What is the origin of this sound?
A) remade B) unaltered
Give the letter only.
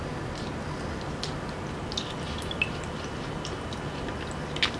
B